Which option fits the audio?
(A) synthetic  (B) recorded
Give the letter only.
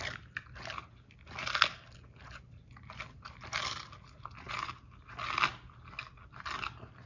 B